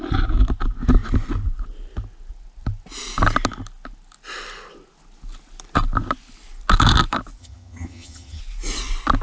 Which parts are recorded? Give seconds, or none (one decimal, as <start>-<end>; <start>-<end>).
0.0-7.4; 8.4-9.2